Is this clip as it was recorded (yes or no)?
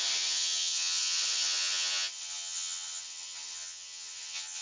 no